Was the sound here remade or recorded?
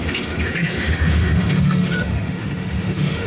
remade